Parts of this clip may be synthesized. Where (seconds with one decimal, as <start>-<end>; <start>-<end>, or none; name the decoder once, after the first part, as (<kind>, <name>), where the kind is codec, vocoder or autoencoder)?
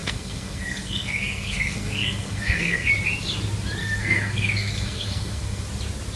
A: 0.0-2.9 (codec, SNAC); 3.8-5.6